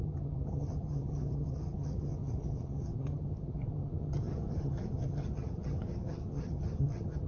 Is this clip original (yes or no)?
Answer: no